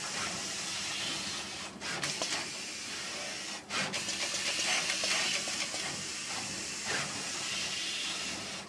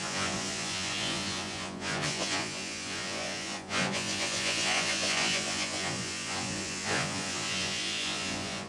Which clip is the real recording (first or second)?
first